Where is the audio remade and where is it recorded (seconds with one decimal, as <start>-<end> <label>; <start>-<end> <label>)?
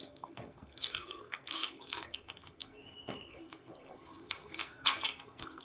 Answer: 0.0-5.6 remade